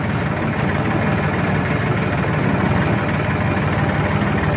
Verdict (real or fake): real